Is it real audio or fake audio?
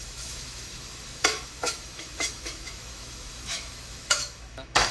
fake